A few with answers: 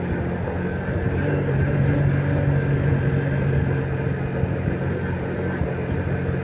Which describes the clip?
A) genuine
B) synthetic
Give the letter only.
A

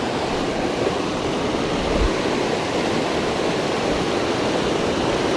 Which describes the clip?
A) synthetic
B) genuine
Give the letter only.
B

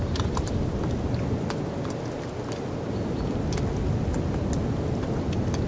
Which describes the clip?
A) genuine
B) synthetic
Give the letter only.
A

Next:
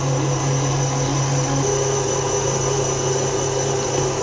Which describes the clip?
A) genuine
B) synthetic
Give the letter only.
A